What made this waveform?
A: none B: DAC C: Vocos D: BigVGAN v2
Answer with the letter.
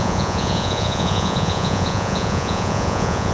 C